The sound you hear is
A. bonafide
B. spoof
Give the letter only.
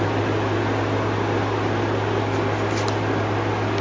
A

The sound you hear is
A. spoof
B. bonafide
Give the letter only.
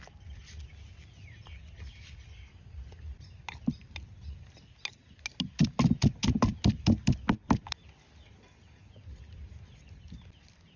B